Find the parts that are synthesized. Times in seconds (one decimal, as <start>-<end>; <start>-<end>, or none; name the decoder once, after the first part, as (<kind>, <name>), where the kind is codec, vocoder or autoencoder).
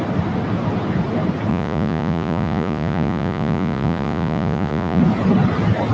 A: 1.5-5.0 (vocoder, Vocos)